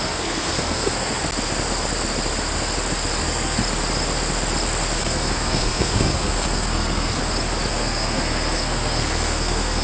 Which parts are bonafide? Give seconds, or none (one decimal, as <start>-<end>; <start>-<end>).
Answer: 1.2-3.2; 3.6-5.0; 7.2-7.7